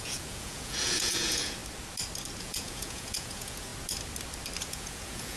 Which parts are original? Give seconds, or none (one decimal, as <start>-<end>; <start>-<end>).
1.6-2.4; 3.7-4.7